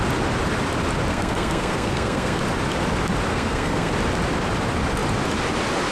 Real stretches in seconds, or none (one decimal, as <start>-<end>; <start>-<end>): 0.0-1.1; 2.4-3.3; 3.9-5.9